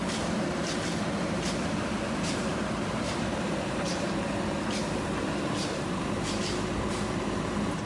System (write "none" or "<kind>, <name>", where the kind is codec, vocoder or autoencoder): vocoder, BigVGAN v2